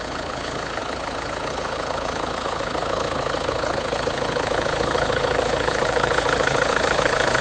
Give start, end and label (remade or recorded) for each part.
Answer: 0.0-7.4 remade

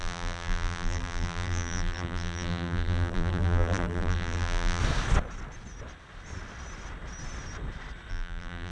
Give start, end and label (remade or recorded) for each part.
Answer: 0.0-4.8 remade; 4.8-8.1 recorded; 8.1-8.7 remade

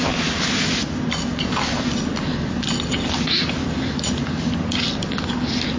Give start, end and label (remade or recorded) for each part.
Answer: 0.0-5.8 recorded

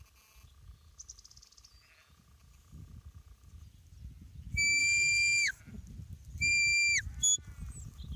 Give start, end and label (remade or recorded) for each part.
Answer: 0.0-4.8 recorded; 4.8-5.6 remade; 5.6-8.2 recorded

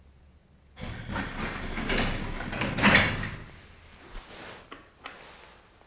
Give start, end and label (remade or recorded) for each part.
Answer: 0.0-5.9 recorded